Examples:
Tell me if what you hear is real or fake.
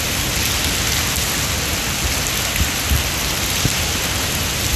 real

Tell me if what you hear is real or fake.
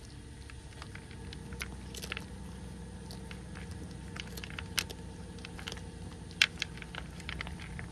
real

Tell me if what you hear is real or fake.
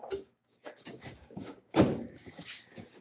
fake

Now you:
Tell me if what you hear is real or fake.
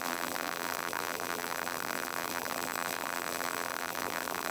fake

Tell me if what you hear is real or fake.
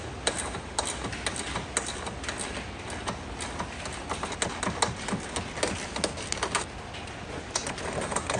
real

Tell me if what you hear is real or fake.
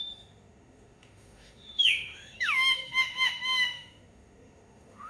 fake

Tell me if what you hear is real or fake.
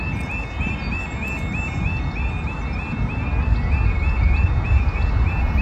real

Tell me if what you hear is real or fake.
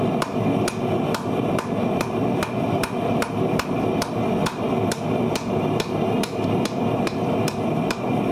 fake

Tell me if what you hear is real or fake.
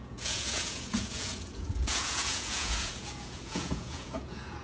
fake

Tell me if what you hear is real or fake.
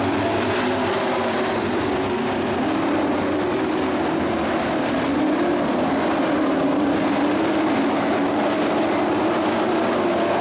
real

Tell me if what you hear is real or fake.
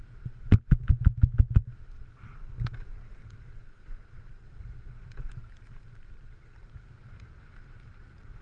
real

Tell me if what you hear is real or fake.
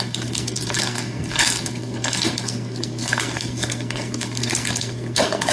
fake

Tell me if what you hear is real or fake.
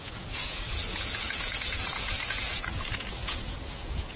fake